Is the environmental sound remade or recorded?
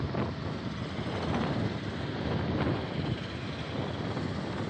recorded